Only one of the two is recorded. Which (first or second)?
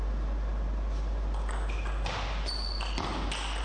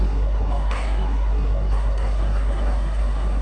first